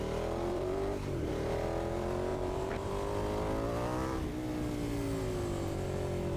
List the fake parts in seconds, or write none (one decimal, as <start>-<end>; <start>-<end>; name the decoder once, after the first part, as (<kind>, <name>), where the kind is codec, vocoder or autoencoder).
0.5-1.3 (vocoder, BigVGAN v2); 2.3-2.9